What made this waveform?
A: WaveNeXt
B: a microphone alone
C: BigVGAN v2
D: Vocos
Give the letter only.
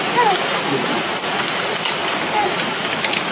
B